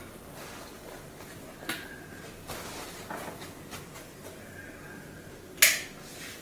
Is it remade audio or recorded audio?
recorded